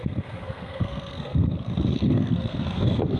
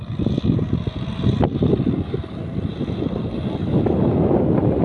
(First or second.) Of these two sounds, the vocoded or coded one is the first